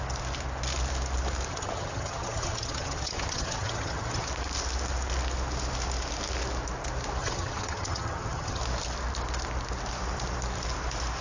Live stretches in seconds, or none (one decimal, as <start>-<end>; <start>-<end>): 0.0-1.5; 4.3-7.2; 8.6-11.2